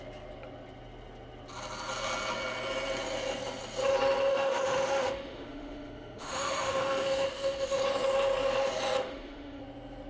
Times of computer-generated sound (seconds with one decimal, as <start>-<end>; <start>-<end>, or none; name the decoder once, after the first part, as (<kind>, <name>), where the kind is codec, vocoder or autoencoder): 4.3-7.8 (autoencoder, DAC-VAE); 9.0-9.6